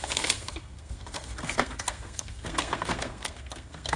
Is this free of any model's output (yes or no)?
no